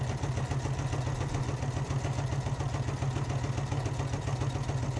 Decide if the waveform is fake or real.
real